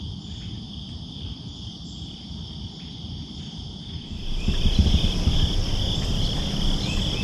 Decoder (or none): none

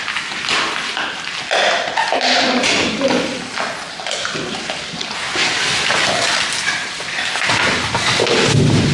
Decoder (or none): none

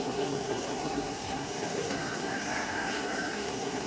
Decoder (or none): codec, SNAC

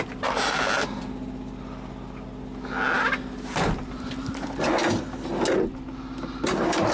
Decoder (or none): none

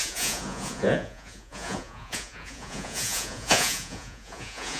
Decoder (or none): vocoder, Vocos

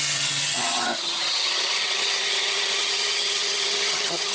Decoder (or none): vocoder, HiFi-GAN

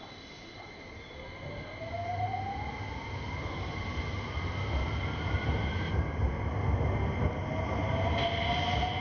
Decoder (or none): none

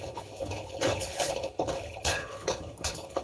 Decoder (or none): codec, HILCodec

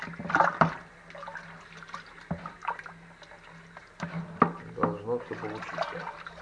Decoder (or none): none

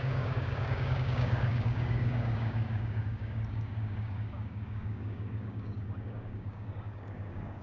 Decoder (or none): codec, DAC